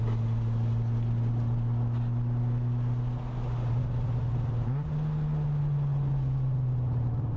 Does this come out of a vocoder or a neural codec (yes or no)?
no